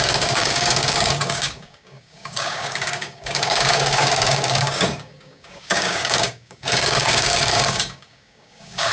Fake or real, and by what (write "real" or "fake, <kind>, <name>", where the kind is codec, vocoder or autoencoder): fake, codec, DAC